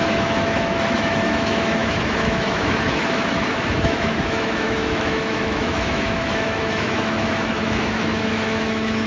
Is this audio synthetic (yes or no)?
yes